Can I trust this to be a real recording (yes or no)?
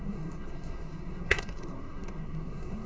no